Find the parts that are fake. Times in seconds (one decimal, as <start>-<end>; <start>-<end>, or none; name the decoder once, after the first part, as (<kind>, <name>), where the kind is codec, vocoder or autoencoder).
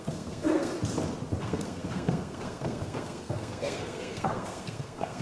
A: 0.0-0.7 (codec, SNAC); 1.4-5.2